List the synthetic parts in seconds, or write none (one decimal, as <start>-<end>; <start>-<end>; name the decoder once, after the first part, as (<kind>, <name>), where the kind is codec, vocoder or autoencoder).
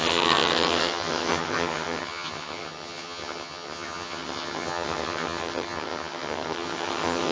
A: 0.0-7.3 (vocoder, HiFi-GAN)